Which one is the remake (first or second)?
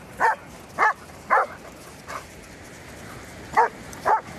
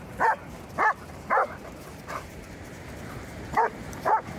second